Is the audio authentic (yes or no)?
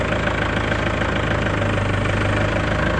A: yes